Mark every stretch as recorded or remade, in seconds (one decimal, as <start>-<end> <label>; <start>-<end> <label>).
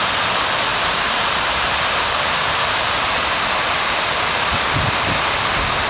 0.0-0.7 recorded; 0.7-4.2 remade; 4.2-5.9 recorded